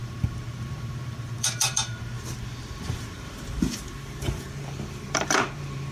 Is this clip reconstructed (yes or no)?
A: yes